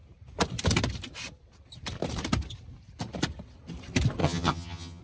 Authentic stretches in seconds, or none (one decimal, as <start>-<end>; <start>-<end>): 0.0-4.2